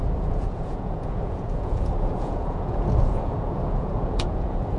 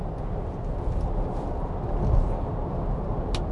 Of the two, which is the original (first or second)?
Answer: second